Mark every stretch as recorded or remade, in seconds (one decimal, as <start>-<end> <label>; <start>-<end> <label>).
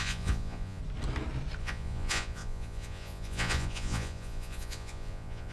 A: 0.0-0.8 remade; 0.8-1.6 recorded; 1.6-5.5 remade